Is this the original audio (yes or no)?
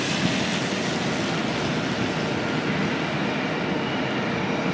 yes